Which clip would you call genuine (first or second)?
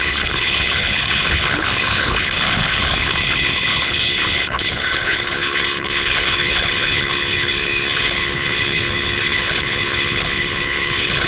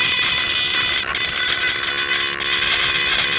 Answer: second